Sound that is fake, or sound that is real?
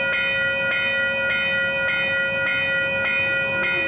real